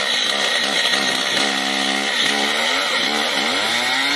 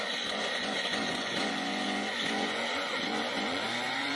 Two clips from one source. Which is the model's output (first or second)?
second